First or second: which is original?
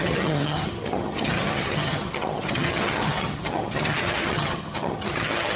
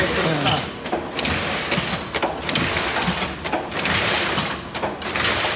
second